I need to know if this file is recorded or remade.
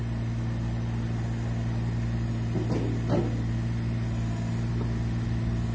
recorded